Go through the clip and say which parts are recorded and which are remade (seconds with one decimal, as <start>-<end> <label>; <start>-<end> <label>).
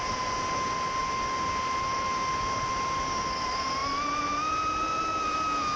0.0-5.8 recorded